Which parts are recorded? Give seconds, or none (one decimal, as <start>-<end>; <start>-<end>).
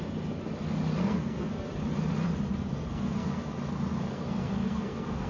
0.0-1.0; 1.7-2.7; 3.5-4.1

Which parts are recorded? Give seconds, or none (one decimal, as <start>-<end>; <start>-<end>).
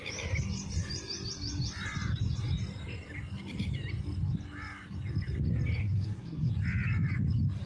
0.0-5.8; 6.5-7.7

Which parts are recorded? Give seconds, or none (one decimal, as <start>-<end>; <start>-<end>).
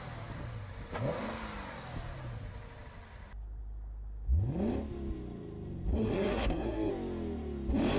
0.0-5.9; 6.9-8.0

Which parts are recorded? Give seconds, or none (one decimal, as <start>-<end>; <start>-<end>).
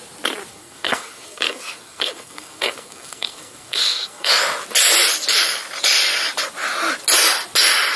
0.0-0.5; 4.3-8.0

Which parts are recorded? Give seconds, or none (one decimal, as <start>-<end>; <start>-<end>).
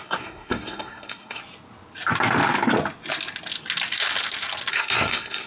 1.4-4.7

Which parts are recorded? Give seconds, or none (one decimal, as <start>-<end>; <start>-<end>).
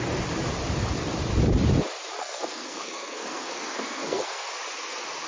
0.0-2.2; 4.5-5.3